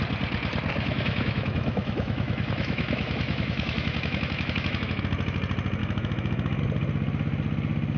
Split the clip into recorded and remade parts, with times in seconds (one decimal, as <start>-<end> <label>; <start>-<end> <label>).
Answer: 0.0-0.7 recorded; 0.7-5.0 remade; 5.0-5.8 recorded; 5.8-6.6 remade; 6.6-8.0 recorded